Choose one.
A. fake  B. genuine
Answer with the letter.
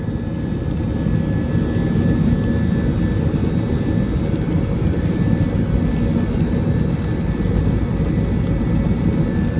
B